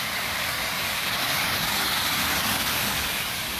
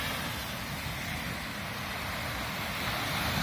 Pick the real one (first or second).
second